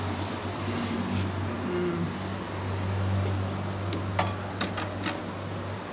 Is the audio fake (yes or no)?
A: no